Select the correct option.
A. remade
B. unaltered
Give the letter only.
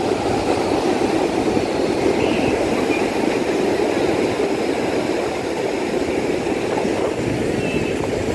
B